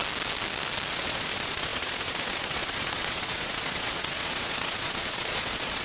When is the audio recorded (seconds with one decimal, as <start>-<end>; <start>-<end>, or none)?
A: 0.0-0.9